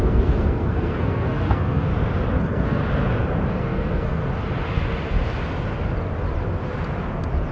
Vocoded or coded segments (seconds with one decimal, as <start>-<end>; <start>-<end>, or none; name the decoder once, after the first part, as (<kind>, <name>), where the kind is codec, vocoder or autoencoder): 0.0-1.9 (codec, SNAC); 2.4-2.8; 3.5-4.2